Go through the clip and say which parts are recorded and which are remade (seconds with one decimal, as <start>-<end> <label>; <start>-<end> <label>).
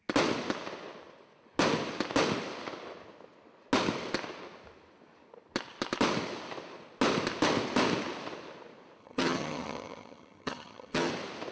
0.0-9.0 recorded; 9.0-11.1 remade; 11.1-11.5 recorded